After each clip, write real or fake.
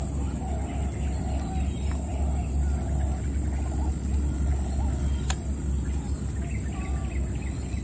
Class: real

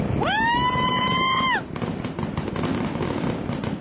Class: real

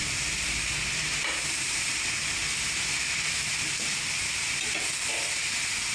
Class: real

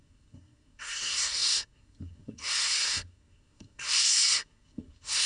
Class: fake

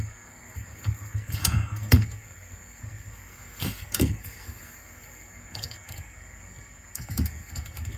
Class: fake